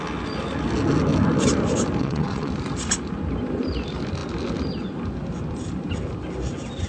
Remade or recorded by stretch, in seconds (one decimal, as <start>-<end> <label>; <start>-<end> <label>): 0.0-2.0 recorded; 2.0-2.5 remade; 2.5-6.9 recorded